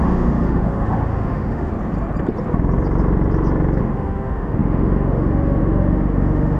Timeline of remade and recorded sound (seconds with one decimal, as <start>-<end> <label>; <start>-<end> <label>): 0.0-1.7 remade; 1.7-3.8 recorded; 3.8-6.6 remade